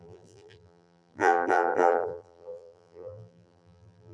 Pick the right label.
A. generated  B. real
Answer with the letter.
A